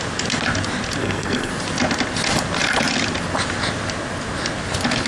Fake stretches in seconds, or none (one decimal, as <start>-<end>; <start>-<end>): 1.0-1.5